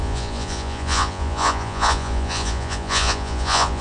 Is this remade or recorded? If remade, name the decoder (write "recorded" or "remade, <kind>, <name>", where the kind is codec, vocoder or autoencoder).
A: remade, vocoder, Vocos